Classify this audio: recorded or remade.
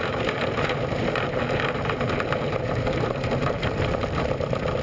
remade